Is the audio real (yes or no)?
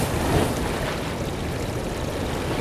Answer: yes